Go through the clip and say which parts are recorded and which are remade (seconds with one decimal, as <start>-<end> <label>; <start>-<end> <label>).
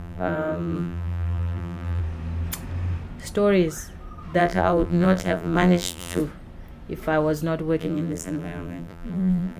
0.0-2.0 remade; 2.0-4.4 recorded; 4.4-6.2 remade; 6.2-7.8 recorded; 7.8-9.6 remade